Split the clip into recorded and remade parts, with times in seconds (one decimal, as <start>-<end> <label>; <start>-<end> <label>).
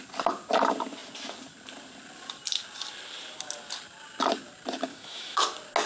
0.0-4.9 recorded; 4.9-5.4 remade; 5.4-5.9 recorded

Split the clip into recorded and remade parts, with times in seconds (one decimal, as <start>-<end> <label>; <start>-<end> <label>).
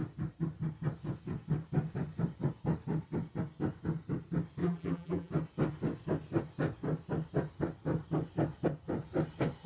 0.0-4.6 recorded; 4.6-5.3 remade; 5.3-9.7 recorded